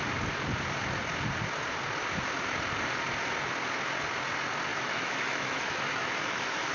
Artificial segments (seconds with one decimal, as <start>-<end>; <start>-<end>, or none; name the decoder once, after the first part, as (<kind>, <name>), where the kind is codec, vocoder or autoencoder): 4.7-6.7 (autoencoder, DAC-VAE)